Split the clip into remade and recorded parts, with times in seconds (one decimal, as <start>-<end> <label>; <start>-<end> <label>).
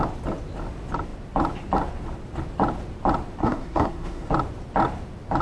0.0-3.4 recorded; 3.4-4.3 remade; 4.3-5.4 recorded